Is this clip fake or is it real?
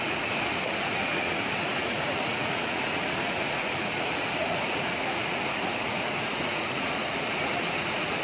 fake